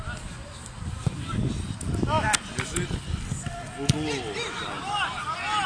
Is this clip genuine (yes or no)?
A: yes